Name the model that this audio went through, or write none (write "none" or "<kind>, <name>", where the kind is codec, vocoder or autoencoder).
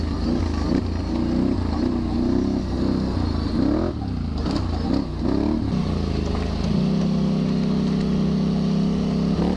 none